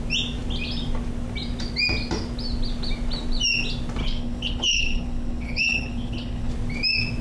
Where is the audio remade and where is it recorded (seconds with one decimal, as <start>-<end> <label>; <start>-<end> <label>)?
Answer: 0.0-4.0 recorded; 4.0-6.5 remade; 6.5-7.2 recorded